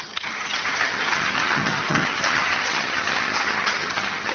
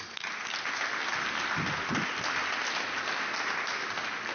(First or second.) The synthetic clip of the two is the first